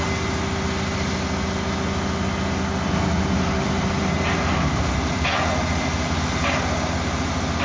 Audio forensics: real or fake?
real